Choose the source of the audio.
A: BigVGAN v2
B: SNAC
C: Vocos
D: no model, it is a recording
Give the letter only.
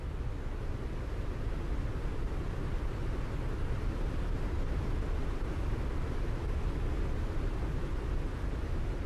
D